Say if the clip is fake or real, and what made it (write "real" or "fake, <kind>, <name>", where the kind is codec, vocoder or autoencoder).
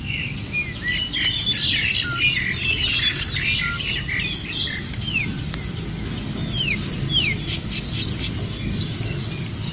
real